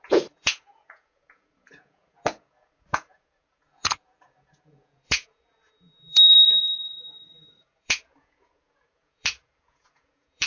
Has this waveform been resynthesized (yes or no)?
yes